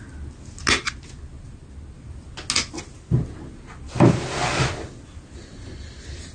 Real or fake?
real